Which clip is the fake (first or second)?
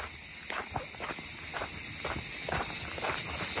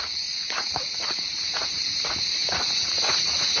second